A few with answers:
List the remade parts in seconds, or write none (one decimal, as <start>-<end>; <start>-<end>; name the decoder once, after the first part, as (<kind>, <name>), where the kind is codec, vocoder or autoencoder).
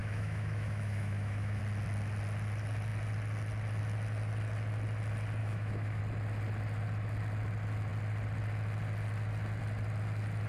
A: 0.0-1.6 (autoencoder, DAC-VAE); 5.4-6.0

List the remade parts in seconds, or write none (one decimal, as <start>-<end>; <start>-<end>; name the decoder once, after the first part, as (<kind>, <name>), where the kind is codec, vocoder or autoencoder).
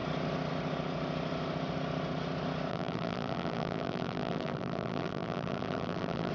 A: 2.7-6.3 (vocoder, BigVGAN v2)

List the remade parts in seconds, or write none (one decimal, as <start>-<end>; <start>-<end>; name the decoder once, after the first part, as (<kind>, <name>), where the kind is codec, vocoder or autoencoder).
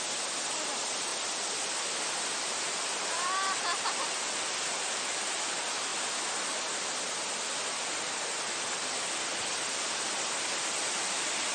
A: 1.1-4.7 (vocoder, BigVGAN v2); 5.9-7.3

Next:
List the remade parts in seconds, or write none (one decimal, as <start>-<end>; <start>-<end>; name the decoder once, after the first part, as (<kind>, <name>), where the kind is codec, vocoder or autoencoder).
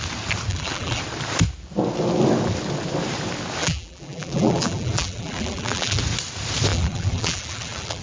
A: 0.5-1.0 (vocoder, BigVGAN v2); 3.6-6.0; 6.7-8.0